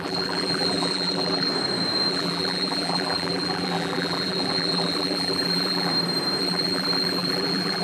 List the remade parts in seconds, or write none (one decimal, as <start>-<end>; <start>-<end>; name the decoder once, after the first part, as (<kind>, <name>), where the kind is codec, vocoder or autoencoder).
0.0-1.5 (vocoder, BigVGAN v2); 2.1-5.9; 6.4-7.8